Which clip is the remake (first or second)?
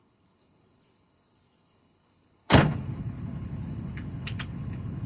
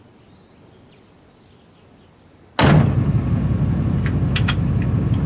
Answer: first